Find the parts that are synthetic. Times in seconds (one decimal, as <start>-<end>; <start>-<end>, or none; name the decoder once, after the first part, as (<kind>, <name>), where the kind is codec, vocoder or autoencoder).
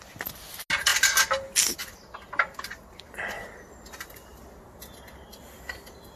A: none